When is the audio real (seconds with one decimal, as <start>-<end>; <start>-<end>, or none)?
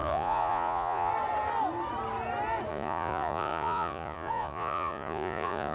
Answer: 1.1-2.7